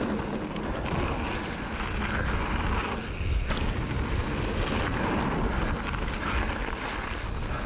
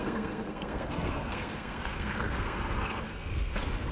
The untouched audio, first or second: first